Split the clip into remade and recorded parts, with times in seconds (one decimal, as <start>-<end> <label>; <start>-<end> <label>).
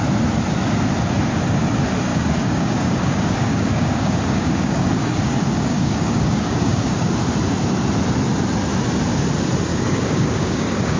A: 0.0-2.1 recorded; 2.1-7.1 remade; 7.1-9.7 recorded; 9.7-11.0 remade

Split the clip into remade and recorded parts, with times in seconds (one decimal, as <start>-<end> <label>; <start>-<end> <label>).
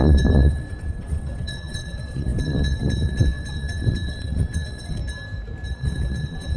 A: 0.0-5.0 remade; 5.0-5.7 recorded; 5.7-6.6 remade